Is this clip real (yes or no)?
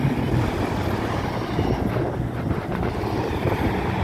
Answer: yes